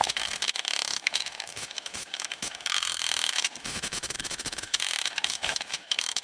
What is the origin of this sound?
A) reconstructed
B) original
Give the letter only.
A